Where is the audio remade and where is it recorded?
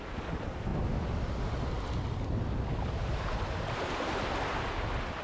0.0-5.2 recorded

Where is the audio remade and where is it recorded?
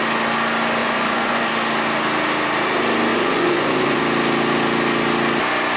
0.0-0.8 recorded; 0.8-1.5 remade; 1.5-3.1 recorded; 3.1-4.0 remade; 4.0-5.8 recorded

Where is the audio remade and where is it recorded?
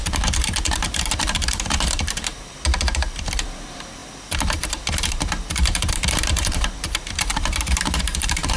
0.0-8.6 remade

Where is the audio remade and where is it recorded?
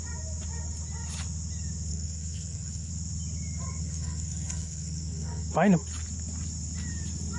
0.0-1.9 recorded; 1.9-2.9 remade; 2.9-3.8 recorded; 3.8-5.5 remade; 5.5-7.4 recorded